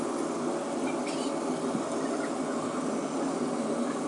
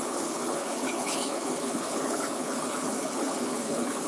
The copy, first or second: second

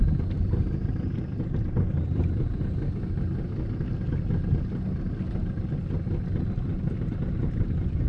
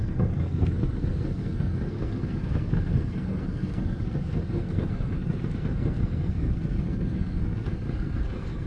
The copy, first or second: second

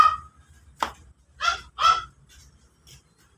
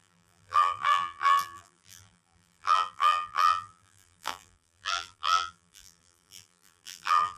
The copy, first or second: second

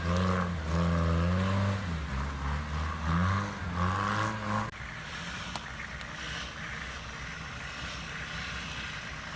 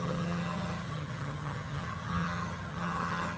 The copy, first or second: second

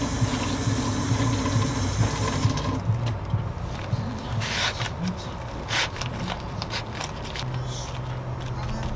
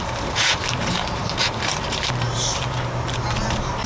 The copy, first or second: second